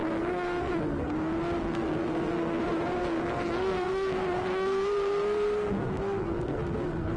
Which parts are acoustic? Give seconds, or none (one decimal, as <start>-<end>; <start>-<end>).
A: 1.1-1.6; 2.6-3.0